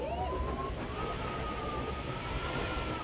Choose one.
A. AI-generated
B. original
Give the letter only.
A